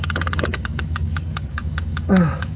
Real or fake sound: fake